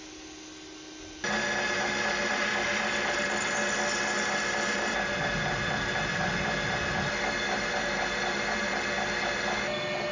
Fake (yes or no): no